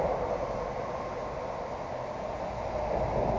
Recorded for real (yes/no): yes